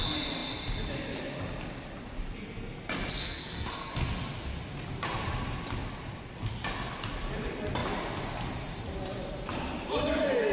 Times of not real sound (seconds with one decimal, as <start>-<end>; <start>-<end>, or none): 3.2-3.9